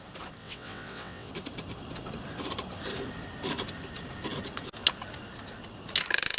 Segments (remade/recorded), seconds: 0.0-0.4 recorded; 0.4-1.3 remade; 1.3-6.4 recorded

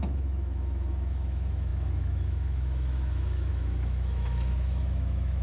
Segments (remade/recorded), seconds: 0.0-5.4 remade

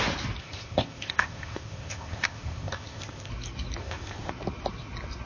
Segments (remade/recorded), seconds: 0.0-0.4 recorded; 0.4-3.3 remade; 3.3-3.8 recorded; 3.8-4.3 remade; 4.3-5.3 recorded

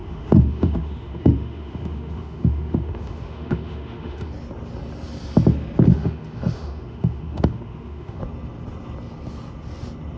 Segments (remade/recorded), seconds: 0.0-4.3 remade; 4.3-5.9 recorded; 5.9-8.2 remade; 8.2-10.2 recorded

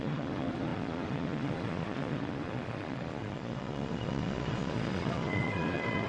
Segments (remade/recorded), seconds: 0.0-6.1 remade

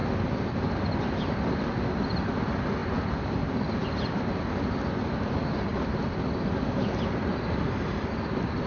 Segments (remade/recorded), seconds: 0.0-5.7 recorded; 5.7-7.3 remade; 7.3-8.7 recorded